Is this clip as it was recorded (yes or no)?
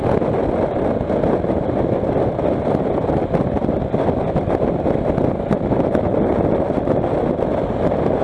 yes